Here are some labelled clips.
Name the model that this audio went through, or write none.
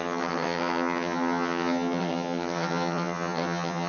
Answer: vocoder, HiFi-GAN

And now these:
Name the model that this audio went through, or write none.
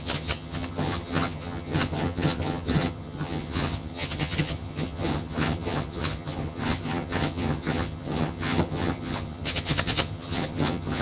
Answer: vocoder, HiFi-GAN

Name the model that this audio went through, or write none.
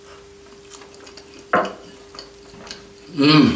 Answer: none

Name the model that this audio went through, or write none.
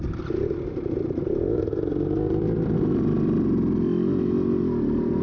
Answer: none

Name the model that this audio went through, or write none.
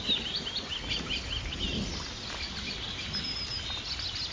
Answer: none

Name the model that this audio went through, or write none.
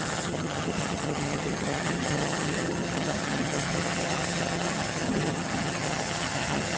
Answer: vocoder, HiFi-GAN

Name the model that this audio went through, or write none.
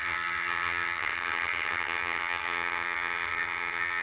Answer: vocoder, HiFi-GAN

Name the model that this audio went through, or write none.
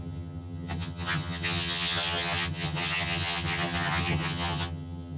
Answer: vocoder, HiFi-GAN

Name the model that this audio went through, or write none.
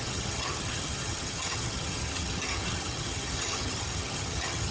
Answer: vocoder, HiFi-GAN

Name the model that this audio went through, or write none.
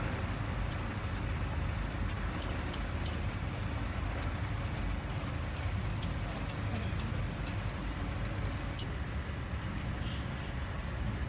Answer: none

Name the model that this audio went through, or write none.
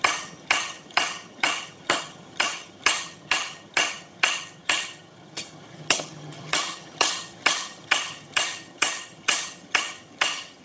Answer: vocoder, HiFi-GAN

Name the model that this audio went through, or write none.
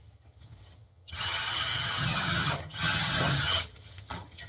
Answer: vocoder, HiFi-GAN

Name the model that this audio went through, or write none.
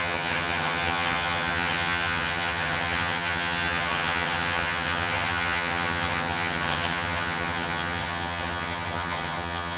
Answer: vocoder, HiFi-GAN